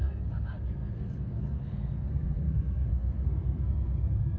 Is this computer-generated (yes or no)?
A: yes